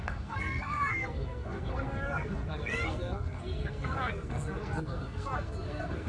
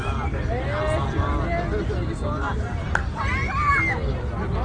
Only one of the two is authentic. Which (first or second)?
second